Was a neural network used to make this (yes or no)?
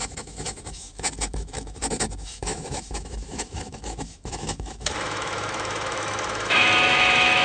yes